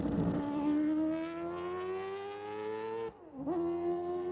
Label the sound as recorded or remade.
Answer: recorded